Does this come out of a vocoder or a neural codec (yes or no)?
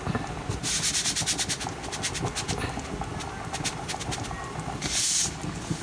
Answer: no